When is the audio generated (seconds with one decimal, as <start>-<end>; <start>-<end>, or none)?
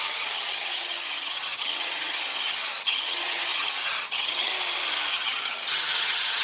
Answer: 0.0-4.5; 5.1-6.4